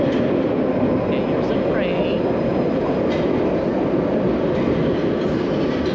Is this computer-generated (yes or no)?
no